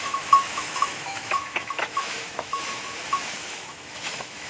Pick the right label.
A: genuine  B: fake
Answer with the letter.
B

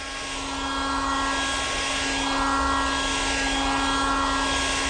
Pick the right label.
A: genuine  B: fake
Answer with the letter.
A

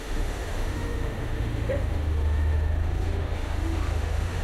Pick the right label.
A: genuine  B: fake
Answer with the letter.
B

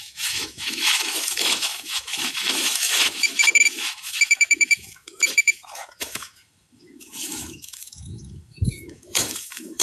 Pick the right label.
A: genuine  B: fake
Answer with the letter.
B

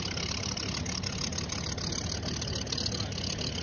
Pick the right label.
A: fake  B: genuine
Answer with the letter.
B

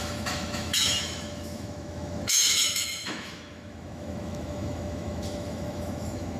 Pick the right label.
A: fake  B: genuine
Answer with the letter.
A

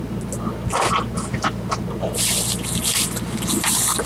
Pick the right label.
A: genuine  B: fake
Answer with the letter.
A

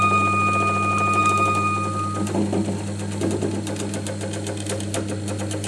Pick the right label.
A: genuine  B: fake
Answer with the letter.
A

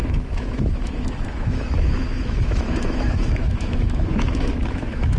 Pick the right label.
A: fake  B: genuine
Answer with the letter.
A